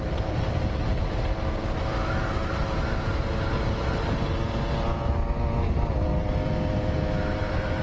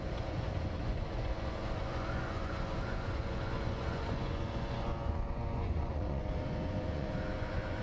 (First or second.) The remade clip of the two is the second